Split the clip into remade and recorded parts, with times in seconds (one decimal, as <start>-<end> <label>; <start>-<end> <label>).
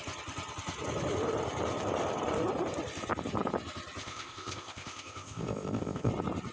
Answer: 0.0-4.0 recorded; 4.0-6.1 remade; 6.1-6.5 recorded